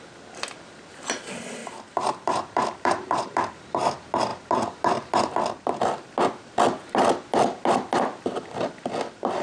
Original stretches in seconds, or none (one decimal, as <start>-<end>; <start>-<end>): 0.0-1.6; 3.5-9.4